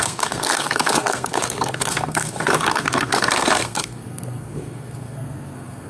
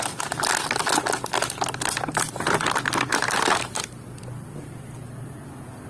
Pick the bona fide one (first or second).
second